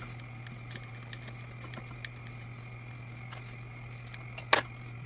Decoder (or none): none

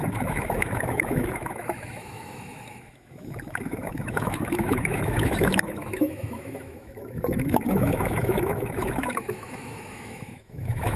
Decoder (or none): autoencoder, DAC-VAE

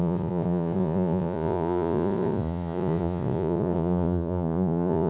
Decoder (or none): vocoder, Vocos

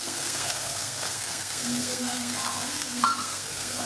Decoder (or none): codec, SNAC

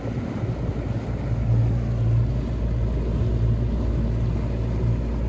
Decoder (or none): none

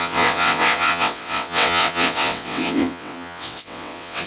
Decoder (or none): vocoder, WaveNeXt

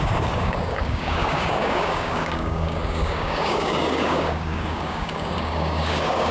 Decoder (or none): codec, DAC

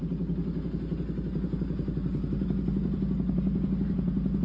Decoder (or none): none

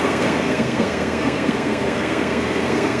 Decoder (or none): codec, SNAC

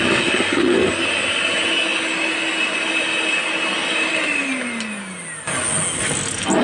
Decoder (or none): none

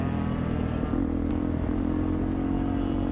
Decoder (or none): none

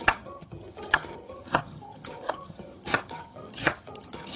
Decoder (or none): vocoder, HiFi-GAN